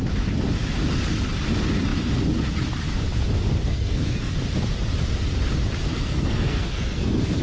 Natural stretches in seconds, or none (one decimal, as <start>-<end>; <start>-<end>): 0.0-3.7; 4.3-5.9

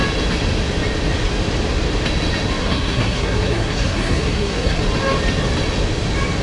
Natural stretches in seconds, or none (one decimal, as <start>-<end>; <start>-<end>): 0.0-2.6; 4.8-6.4

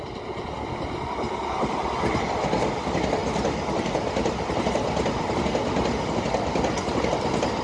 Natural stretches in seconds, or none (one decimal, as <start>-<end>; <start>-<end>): 0.0-7.6

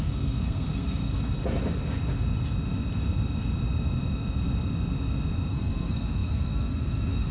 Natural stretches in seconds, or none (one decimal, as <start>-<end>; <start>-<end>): 1.1-5.5

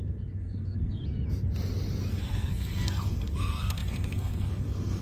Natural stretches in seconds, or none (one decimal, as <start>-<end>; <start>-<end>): 1.0-2.1